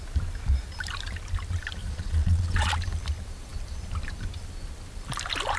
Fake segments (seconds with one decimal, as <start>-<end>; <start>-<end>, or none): 1.8-2.7